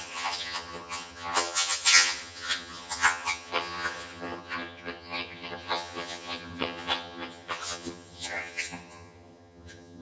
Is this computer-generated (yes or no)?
yes